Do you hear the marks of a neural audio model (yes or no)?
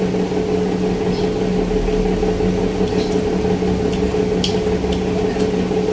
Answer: no